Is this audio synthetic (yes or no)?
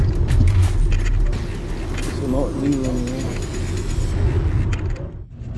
no